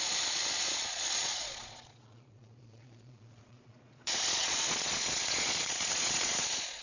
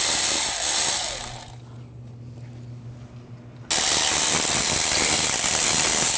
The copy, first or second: first